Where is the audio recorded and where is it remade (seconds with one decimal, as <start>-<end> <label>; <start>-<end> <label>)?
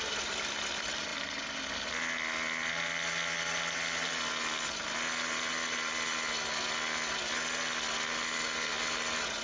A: 0.0-9.4 recorded